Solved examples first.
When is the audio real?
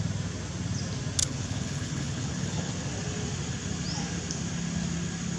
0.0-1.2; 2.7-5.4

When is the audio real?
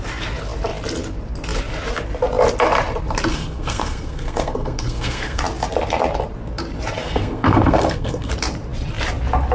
0.0-3.3; 5.4-7.0; 8.3-9.5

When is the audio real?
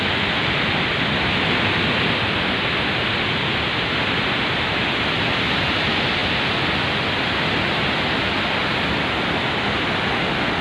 0.0-10.6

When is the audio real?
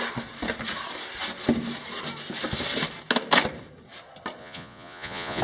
0.0-4.4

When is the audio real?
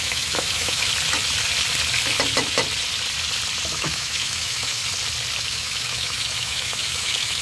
0.9-3.7; 4.8-5.4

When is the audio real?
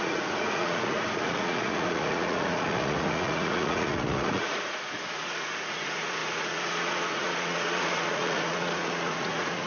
none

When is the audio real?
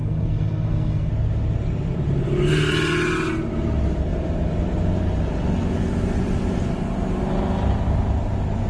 1.1-8.7